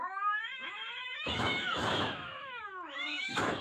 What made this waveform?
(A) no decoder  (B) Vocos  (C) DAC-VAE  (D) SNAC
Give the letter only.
C